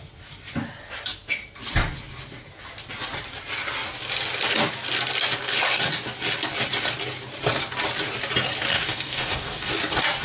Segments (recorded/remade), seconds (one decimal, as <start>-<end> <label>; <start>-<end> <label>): 0.0-8.7 recorded; 8.7-9.7 remade; 9.7-10.2 recorded